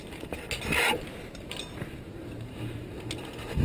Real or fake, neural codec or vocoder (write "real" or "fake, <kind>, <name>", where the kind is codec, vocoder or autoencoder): real